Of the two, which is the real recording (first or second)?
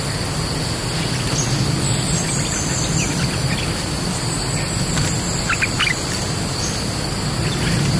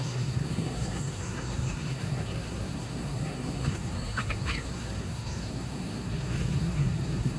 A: first